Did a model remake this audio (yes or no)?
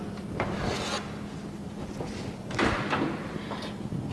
no